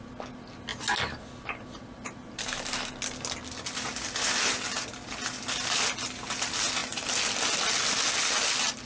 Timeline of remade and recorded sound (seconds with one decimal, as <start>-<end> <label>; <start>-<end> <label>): 0.0-8.9 recorded